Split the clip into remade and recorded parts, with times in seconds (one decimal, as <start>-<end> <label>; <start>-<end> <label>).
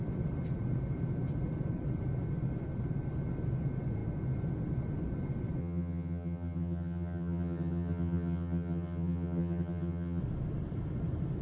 0.0-5.6 recorded; 5.6-10.2 remade; 10.2-11.4 recorded